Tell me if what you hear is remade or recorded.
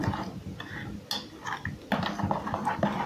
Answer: recorded